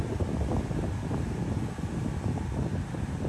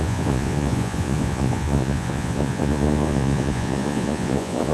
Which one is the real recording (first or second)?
first